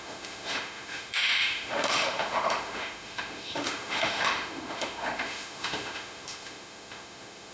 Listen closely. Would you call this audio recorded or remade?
remade